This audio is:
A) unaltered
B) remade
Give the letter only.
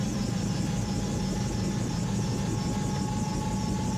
A